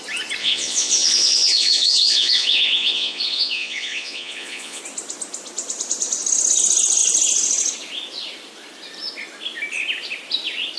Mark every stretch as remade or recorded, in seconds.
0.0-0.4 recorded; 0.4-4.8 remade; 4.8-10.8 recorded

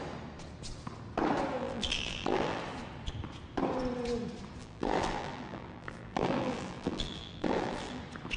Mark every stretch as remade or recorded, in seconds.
0.0-1.6 recorded; 1.6-2.6 remade; 2.6-4.6 recorded; 4.6-8.0 remade; 8.0-8.4 recorded

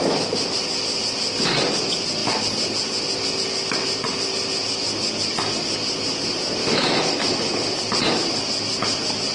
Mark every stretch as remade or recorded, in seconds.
0.0-6.6 recorded; 6.6-7.5 remade; 7.5-9.3 recorded